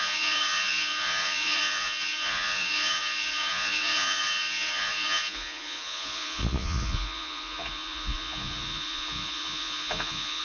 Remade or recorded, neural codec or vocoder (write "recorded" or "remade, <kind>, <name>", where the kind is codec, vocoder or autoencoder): remade, vocoder, Vocos